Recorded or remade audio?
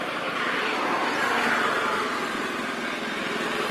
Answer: recorded